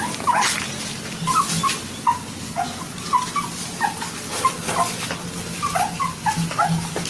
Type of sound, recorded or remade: recorded